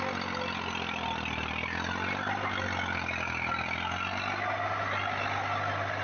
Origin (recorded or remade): recorded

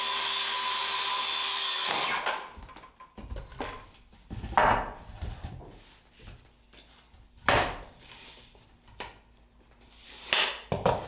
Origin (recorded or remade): recorded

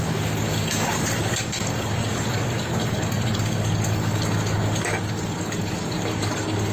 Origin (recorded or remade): remade